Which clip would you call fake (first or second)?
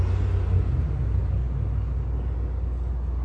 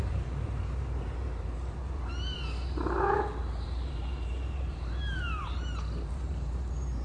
second